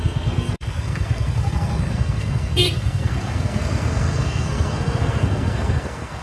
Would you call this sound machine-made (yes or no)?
yes